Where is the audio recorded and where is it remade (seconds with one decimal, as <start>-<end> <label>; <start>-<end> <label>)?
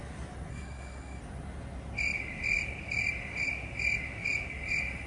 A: 0.0-0.5 recorded; 0.5-1.2 remade; 1.2-5.1 recorded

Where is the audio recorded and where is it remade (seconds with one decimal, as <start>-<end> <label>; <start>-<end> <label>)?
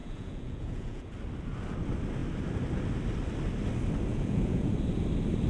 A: 0.0-1.1 remade; 1.1-4.1 recorded; 4.1-4.7 remade; 4.7-5.5 recorded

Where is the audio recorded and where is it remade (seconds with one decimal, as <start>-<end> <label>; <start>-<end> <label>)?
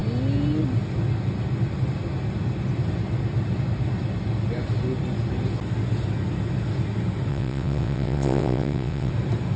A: 0.0-7.3 recorded; 7.3-9.1 remade; 9.1-9.6 recorded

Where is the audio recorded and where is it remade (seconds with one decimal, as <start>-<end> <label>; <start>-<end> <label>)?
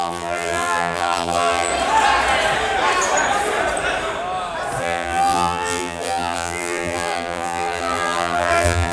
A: 0.0-1.7 remade; 1.7-4.8 recorded; 4.8-8.9 remade